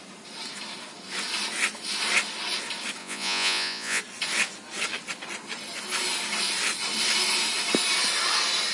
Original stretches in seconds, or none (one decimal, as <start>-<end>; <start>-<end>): 0.0-3.0; 4.0-8.7

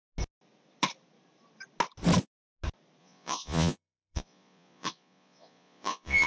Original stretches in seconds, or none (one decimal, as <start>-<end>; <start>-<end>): 0.0-3.0

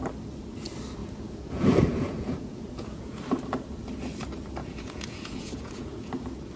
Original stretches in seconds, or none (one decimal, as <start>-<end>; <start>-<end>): 0.0-1.0; 3.4-4.6; 6.1-6.6

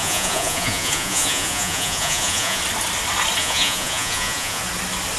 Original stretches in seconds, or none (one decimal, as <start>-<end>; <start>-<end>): 2.6-3.4; 4.6-5.2